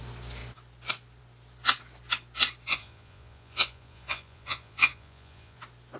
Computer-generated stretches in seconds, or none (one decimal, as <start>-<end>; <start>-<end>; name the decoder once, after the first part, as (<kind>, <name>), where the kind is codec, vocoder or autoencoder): 2.7-5.6 (vocoder, Vocos)